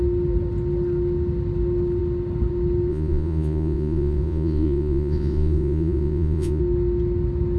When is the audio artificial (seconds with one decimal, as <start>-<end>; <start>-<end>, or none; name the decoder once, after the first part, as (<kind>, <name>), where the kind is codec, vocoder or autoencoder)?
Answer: 2.9-6.6 (vocoder, Vocos)